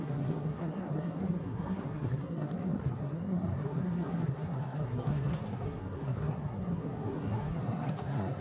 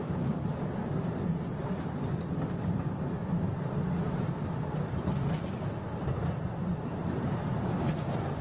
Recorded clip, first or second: second